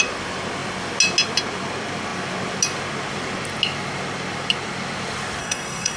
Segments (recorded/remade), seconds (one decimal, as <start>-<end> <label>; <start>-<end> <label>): 0.0-5.4 recorded; 5.4-6.0 remade